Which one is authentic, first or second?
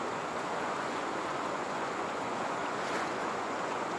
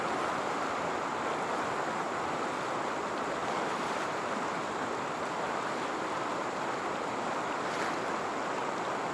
second